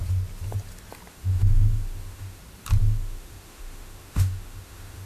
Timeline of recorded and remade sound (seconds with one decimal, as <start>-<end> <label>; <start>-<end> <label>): 0.0-1.1 recorded; 1.1-2.4 remade; 2.4-2.8 recorded; 2.8-5.1 remade

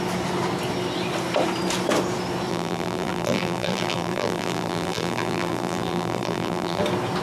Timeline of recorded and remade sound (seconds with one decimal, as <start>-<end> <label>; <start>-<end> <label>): 0.0-2.5 recorded; 2.5-6.8 remade; 6.8-7.2 recorded

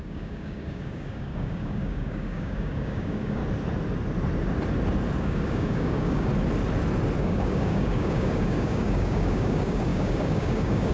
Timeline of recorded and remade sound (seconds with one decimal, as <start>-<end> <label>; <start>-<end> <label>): 0.0-3.4 remade; 3.4-5.2 recorded; 5.2-6.3 remade; 6.3-7.2 recorded; 7.2-10.9 remade

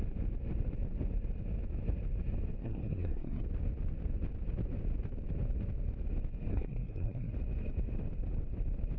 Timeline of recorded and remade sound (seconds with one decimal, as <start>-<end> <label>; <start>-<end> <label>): 0.0-2.6 recorded; 2.6-3.4 remade; 3.4-6.5 recorded; 6.5-7.3 remade; 7.3-9.0 recorded

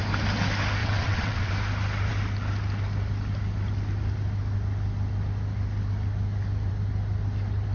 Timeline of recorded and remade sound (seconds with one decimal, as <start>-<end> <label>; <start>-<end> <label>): 0.0-0.8 recorded; 0.8-1.5 remade; 1.5-7.7 recorded